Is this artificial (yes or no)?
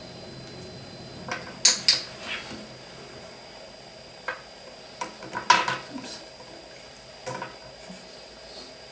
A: no